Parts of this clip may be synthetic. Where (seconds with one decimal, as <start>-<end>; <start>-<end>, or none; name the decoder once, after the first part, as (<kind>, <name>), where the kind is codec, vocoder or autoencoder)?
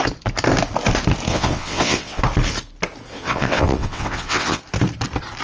1.3-2.2 (vocoder, WaveNeXt); 3.1-4.6